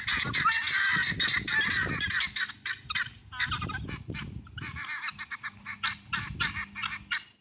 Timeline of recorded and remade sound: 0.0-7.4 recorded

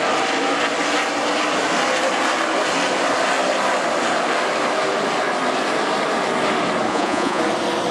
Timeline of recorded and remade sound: 0.0-6.9 recorded; 6.9-7.4 remade; 7.4-7.9 recorded

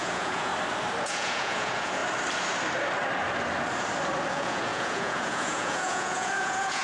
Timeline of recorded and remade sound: 0.0-0.5 remade; 0.5-1.0 recorded; 1.0-2.0 remade; 2.0-4.3 recorded; 4.3-6.8 remade

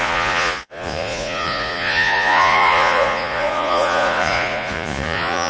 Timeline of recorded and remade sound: 0.0-5.5 remade

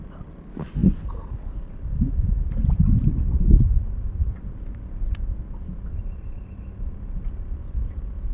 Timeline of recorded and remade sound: 0.0-8.3 recorded

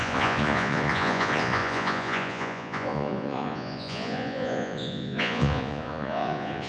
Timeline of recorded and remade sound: 0.0-6.7 remade